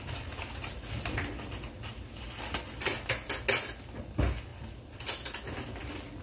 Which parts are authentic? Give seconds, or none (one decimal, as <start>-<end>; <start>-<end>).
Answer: 0.0-6.2